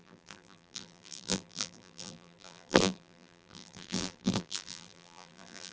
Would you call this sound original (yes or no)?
no